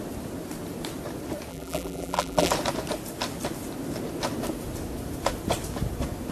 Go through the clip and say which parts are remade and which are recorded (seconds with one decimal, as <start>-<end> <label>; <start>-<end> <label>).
0.0-1.5 recorded; 1.5-2.5 remade; 2.5-6.3 recorded